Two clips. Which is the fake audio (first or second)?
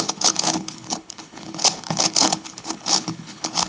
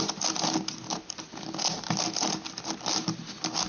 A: first